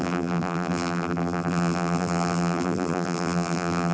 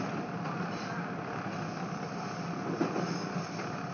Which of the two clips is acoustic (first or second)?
second